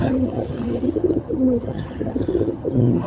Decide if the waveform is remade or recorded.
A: remade